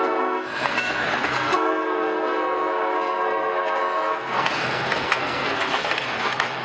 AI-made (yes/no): yes